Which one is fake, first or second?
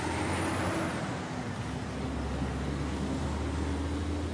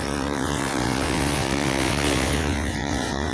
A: second